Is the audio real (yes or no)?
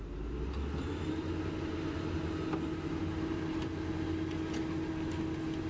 yes